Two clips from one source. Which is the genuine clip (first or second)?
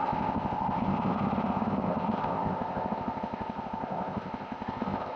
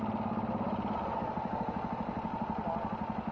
second